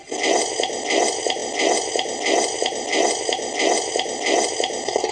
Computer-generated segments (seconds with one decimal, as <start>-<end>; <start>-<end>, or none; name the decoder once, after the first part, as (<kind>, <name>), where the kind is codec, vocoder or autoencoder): none

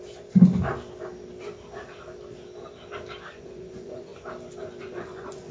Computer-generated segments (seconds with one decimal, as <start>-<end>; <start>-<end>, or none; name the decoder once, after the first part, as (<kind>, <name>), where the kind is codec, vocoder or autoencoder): 3.3-4.1 (vocoder, Vocos); 4.8-5.5

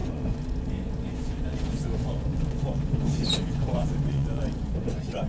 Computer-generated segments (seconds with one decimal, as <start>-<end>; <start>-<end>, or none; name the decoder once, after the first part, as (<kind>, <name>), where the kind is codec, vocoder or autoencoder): 0.0-5.3 (vocoder, Vocos)

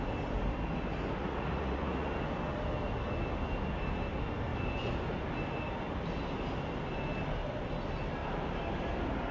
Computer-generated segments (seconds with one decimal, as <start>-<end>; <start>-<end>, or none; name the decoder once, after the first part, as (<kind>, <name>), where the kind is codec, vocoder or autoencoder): 1.2-2.1 (vocoder, Vocos)

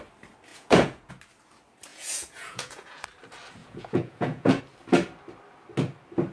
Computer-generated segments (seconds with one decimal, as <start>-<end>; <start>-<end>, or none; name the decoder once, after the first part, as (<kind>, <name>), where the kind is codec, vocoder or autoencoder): 0.5-1.1 (vocoder, Vocos); 1.9-3.0; 3.6-4.6

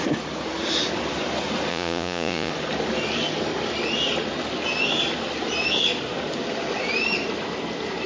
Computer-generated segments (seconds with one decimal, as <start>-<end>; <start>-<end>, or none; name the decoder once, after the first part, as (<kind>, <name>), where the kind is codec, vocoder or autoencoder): 1.7-2.5 (vocoder, Vocos)